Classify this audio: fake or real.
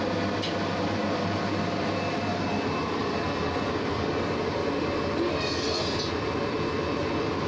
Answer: real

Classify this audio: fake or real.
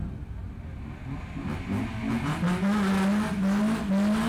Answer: real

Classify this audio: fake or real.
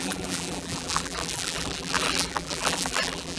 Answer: fake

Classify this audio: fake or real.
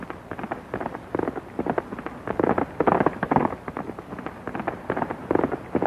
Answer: real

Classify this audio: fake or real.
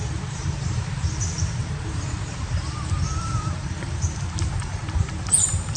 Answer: fake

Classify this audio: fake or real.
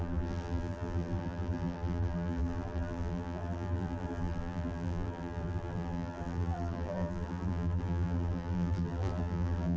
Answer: fake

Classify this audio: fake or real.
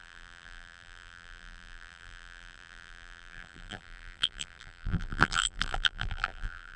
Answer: fake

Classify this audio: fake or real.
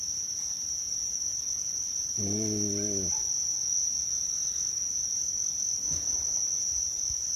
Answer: real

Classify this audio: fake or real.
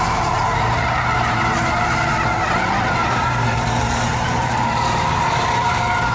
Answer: fake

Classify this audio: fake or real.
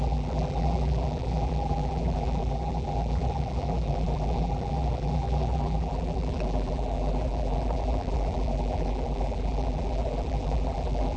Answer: fake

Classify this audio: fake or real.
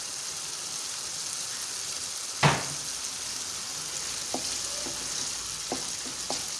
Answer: real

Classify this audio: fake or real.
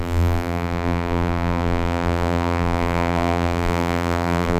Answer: fake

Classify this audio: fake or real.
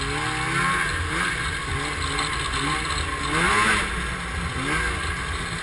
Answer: real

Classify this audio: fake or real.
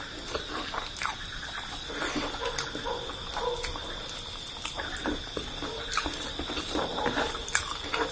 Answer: real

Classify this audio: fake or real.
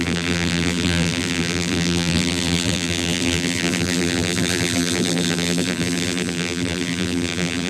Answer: fake